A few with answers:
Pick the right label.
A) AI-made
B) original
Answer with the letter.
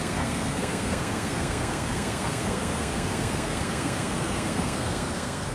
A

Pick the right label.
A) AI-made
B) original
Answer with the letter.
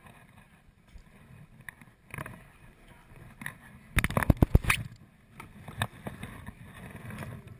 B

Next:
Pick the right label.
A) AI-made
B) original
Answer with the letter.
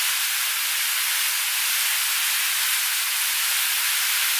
B